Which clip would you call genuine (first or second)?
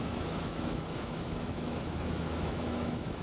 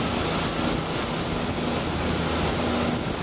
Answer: second